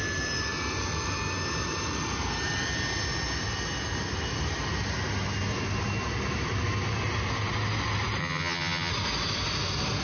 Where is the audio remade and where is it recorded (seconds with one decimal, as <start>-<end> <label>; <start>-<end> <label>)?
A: 0.0-8.2 recorded; 8.2-8.9 remade; 8.9-10.0 recorded